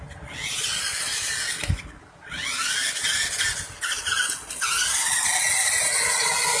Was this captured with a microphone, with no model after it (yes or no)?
yes